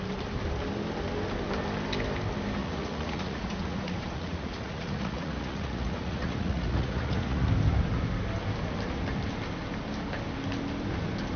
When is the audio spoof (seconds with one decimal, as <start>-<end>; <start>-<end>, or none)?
2.6-7.5